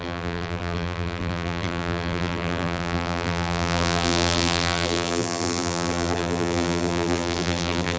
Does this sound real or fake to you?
fake